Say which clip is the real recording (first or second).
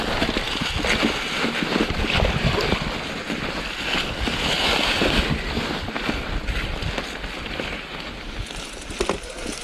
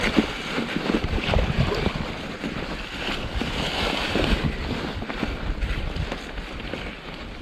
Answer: first